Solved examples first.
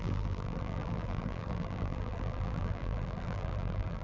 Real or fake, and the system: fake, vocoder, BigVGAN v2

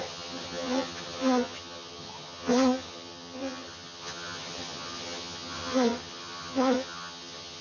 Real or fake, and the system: fake, vocoder, HiFi-GAN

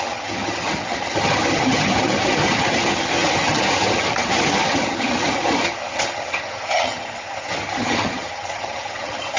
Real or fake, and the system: fake, vocoder, HiFi-GAN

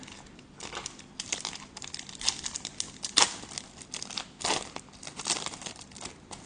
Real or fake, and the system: real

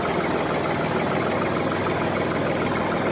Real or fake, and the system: real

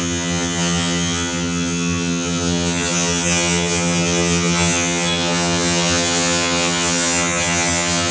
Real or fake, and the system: fake, vocoder, HiFi-GAN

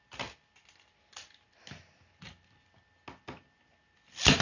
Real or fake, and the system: real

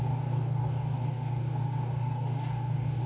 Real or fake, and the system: fake, codec, DAC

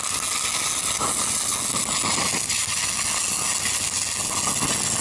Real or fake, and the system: real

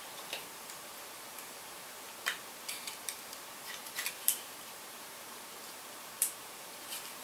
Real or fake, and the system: fake, vocoder, BigVGAN v2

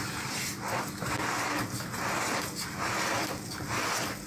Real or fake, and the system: real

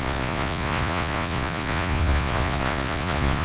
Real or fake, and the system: fake, vocoder, Vocos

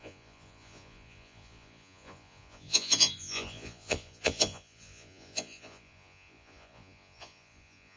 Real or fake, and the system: fake, vocoder, Vocos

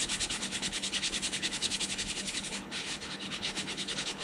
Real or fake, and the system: fake, codec, HILCodec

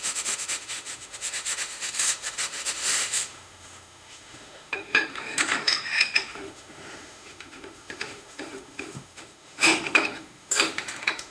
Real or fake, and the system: fake, autoencoder, DAC-VAE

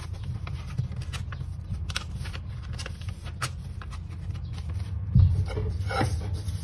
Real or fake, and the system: real